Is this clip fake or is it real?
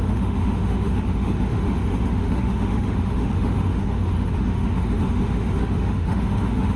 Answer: fake